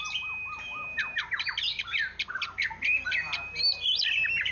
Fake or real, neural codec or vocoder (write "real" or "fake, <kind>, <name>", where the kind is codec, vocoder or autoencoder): real